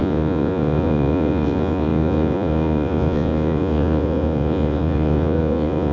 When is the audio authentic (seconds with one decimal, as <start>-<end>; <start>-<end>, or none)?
none